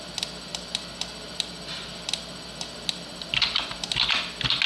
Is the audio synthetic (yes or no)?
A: no